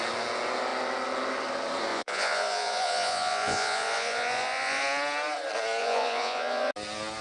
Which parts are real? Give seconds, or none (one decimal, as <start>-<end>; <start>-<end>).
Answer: 0.0-1.9; 4.8-5.8; 6.7-7.2